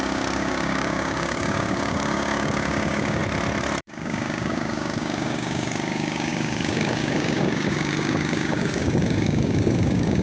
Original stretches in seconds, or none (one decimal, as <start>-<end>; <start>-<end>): 3.2-3.8